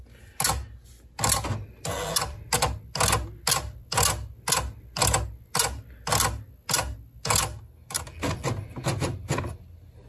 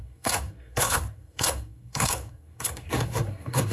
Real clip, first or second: first